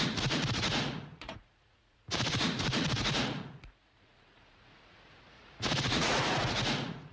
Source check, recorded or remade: remade